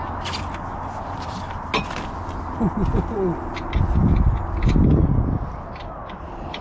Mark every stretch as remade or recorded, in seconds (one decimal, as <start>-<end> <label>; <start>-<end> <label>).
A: 0.0-5.8 recorded; 5.8-6.6 remade